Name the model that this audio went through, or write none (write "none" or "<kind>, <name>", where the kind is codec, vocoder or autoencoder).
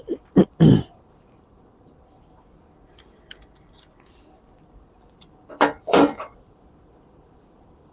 vocoder, BigVGAN v2